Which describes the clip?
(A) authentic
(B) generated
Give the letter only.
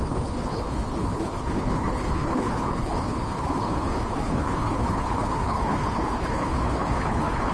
B